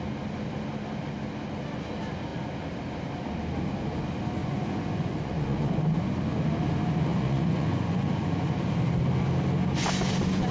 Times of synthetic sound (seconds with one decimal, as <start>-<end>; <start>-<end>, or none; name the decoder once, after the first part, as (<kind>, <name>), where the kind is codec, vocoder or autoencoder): 4.4-5.7 (vocoder, Vocos); 7.1-8.5